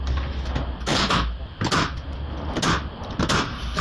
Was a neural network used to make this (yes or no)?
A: no